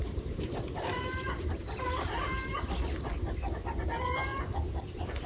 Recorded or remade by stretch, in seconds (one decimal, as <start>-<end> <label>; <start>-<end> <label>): 0.0-2.5 remade; 2.5-4.3 recorded; 4.3-5.3 remade